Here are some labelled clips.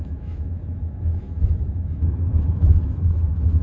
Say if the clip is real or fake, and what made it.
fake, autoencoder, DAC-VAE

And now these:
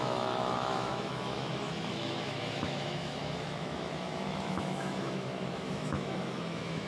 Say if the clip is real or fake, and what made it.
fake, autoencoder, DAC-VAE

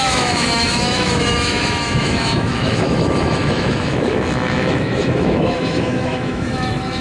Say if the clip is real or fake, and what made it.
fake, autoencoder, DAC-VAE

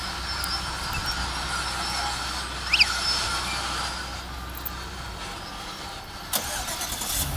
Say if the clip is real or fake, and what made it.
real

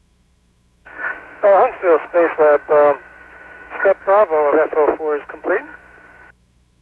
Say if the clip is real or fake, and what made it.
fake, autoencoder, DAC-VAE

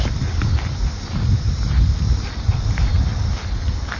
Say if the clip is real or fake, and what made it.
real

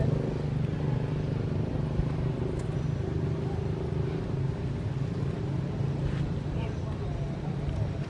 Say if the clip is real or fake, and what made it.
real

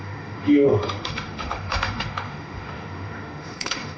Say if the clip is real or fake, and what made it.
fake, autoencoder, DAC-VAE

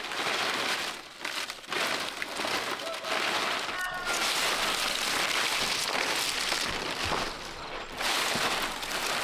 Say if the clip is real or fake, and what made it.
real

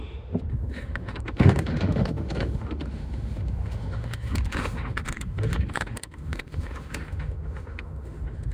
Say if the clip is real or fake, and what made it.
fake, autoencoder, DAC-VAE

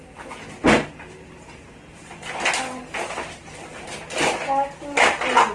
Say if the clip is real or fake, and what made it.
real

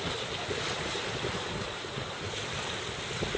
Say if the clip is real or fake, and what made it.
real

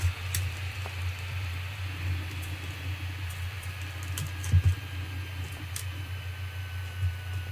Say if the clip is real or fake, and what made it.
real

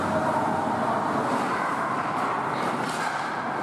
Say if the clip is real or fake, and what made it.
real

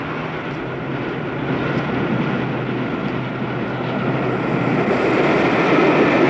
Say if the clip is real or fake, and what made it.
real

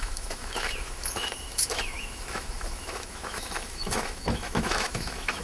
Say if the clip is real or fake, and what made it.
fake, autoencoder, DAC-VAE